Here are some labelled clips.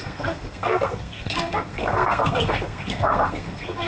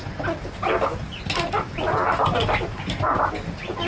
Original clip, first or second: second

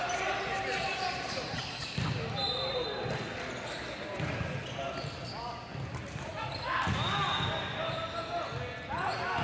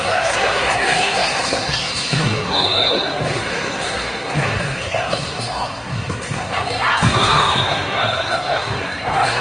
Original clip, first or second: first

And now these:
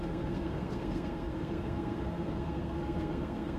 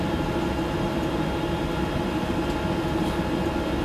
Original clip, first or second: second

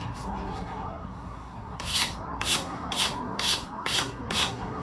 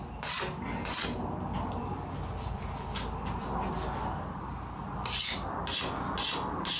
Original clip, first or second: second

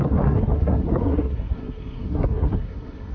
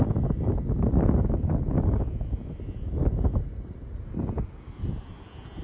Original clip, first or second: second